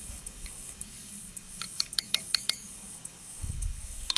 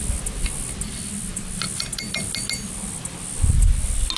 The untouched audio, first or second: second